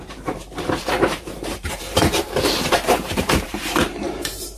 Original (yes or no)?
no